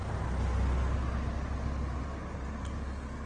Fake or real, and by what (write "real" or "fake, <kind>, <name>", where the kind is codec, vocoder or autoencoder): real